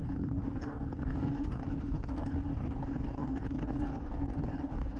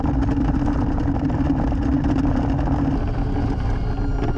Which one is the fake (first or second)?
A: first